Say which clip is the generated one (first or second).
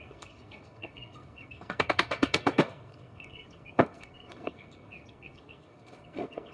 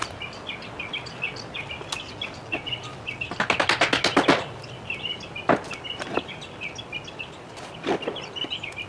first